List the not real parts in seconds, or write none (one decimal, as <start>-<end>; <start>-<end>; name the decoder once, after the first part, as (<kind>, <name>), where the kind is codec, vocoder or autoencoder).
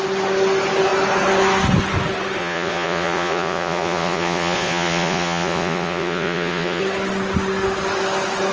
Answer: 2.4-6.8 (vocoder, Vocos)